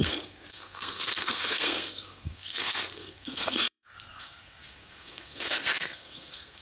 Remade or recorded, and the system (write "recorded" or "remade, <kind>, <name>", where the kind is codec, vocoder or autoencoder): remade, codec, SNAC